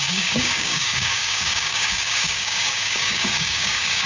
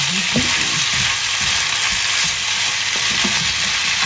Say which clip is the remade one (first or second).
first